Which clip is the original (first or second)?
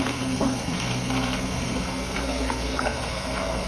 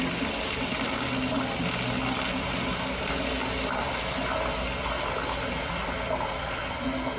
second